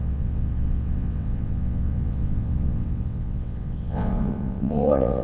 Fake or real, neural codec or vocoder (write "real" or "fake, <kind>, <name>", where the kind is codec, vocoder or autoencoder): fake, vocoder, WaveNeXt